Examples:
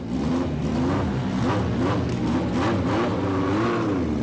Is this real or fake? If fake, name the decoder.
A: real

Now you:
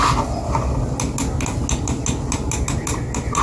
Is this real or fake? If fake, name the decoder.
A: real